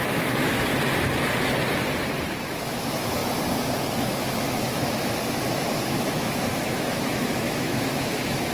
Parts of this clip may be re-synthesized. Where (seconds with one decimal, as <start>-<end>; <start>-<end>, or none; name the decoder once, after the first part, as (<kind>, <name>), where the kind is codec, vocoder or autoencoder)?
0.0-0.7 (autoencoder, DAC-VAE); 2.4-3.2; 3.9-8.5